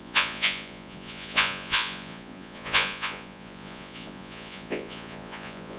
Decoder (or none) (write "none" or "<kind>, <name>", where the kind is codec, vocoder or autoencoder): vocoder, Vocos